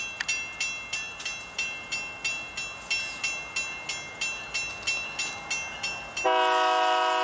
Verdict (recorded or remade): recorded